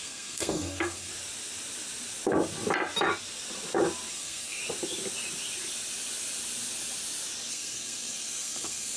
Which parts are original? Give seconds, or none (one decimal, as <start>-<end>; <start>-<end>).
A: 1.1-4.1; 4.6-7.5